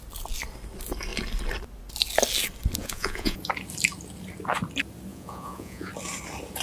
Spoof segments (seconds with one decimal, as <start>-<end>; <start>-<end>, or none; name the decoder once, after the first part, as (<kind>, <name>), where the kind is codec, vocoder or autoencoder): 2.8-3.4 (vocoder, Vocos); 5.1-5.9